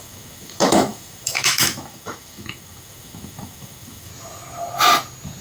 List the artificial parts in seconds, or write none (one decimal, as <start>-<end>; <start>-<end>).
0.0-4.1